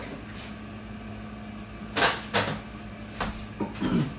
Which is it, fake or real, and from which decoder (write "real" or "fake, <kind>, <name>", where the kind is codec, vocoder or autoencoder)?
real